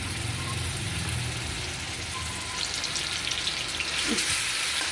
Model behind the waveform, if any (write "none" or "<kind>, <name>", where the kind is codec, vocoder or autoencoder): none